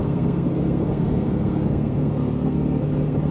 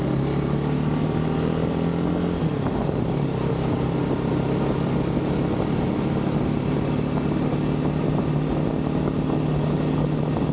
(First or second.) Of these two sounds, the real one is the second